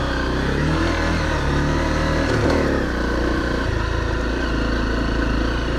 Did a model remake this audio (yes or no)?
no